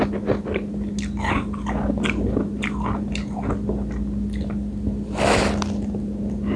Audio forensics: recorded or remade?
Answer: recorded